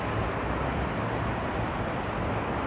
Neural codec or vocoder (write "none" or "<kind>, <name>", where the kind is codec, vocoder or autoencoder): none